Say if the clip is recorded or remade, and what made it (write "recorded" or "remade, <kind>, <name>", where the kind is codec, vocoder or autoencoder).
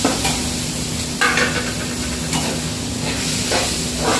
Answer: recorded